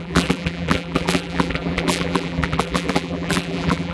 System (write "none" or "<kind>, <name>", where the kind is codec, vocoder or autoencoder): vocoder, BigVGAN v2